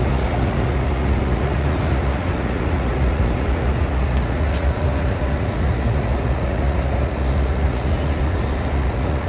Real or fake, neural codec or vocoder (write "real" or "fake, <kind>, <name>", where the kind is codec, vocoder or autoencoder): fake, vocoder, Vocos